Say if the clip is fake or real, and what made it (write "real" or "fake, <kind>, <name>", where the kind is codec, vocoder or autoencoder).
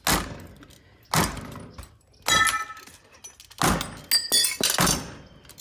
real